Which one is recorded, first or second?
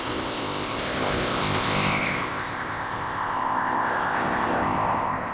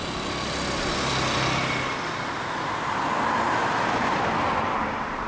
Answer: second